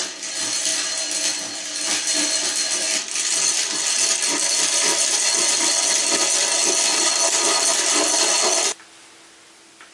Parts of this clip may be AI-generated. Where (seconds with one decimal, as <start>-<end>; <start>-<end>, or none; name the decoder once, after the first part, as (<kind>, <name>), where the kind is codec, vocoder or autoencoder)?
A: none